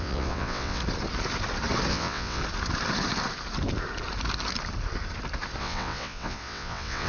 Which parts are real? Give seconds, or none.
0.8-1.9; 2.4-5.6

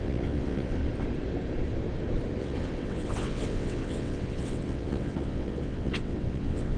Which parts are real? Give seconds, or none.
0.8-2.4

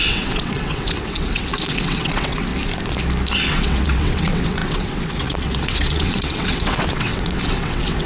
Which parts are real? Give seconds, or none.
2.5-3.5

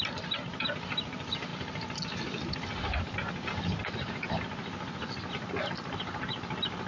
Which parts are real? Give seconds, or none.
0.0-6.9

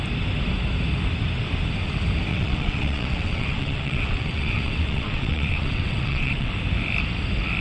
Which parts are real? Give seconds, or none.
0.0-2.3; 6.5-7.6

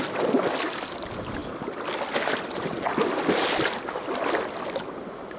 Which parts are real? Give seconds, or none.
0.0-5.4

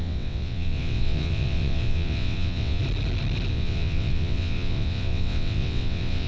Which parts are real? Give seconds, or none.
2.8-3.5

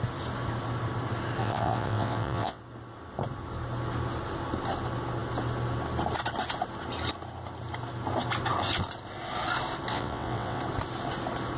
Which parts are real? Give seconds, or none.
0.0-1.4; 2.6-9.9; 10.6-11.6